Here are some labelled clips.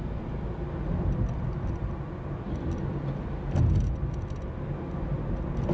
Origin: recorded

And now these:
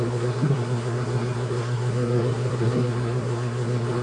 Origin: remade